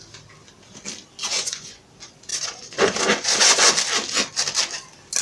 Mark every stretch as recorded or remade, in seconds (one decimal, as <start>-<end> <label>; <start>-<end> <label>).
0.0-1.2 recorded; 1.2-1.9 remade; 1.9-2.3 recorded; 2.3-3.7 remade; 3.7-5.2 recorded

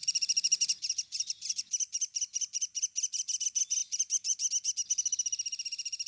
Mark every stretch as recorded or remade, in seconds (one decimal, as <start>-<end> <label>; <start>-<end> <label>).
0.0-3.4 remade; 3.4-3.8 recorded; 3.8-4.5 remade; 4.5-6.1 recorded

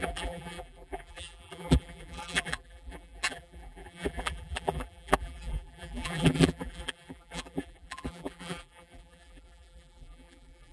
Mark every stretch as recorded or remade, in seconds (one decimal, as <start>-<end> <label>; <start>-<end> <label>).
0.0-10.7 remade

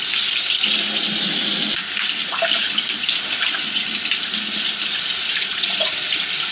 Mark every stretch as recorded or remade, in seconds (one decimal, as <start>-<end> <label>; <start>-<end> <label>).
0.0-5.5 recorded; 5.5-6.1 remade; 6.1-6.5 recorded

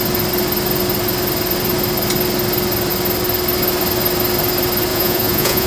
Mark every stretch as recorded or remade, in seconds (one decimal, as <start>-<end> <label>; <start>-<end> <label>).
0.0-4.9 recorded; 4.9-5.7 remade

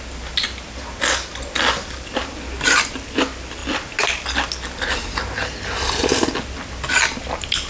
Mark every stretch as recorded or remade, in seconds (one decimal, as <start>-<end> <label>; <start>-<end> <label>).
0.0-7.7 recorded

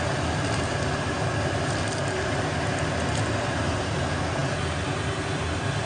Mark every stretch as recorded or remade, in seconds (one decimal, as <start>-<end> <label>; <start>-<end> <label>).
0.0-5.9 recorded